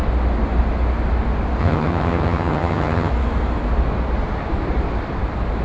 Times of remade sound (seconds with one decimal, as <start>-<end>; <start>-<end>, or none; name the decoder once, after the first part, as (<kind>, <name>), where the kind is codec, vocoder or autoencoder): 1.6-3.1 (vocoder, HiFi-GAN)